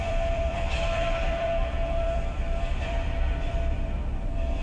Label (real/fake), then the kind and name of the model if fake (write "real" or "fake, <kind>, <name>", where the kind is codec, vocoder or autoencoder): fake, vocoder, BigVGAN v2